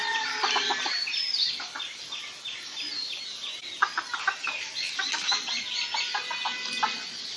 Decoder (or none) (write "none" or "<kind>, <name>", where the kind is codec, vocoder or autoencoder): none